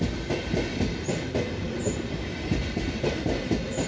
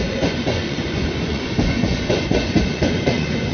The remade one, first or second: second